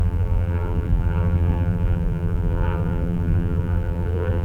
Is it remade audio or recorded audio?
remade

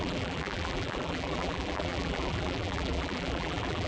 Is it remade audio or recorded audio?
remade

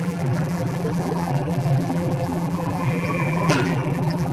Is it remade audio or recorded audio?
remade